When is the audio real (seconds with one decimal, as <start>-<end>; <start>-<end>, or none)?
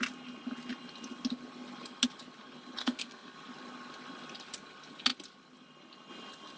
0.0-2.8; 3.3-6.6